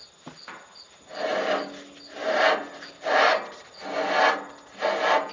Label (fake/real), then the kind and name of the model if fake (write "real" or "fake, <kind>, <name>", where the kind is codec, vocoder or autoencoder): real